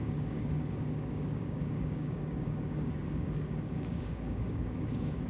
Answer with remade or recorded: remade